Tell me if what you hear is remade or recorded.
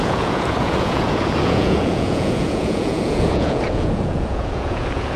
remade